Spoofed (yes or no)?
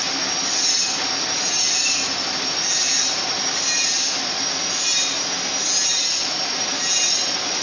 no